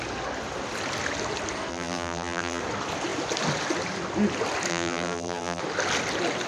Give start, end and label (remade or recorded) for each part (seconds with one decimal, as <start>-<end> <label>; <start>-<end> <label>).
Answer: 0.0-1.7 recorded; 1.7-2.6 remade; 2.6-4.7 recorded; 4.7-5.6 remade; 5.6-6.5 recorded

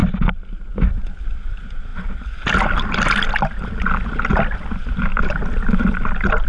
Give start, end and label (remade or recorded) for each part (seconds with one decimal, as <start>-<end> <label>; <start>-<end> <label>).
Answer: 0.0-0.7 recorded; 0.7-6.5 remade